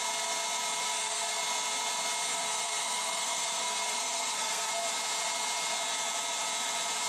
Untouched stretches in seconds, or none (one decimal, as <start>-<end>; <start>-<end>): 0.0-0.8; 1.4-2.3; 4.7-7.1